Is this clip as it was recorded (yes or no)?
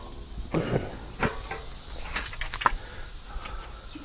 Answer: yes